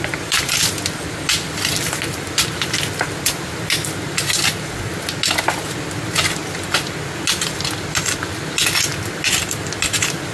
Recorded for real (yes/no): yes